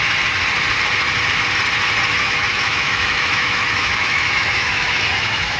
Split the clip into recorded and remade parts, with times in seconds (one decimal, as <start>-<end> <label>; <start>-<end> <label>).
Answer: 0.0-2.1 recorded; 2.1-5.6 remade